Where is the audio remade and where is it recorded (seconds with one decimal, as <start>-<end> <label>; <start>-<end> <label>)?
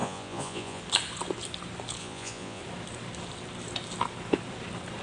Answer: 0.0-0.8 remade; 0.8-2.0 recorded; 2.0-2.6 remade; 2.6-5.0 recorded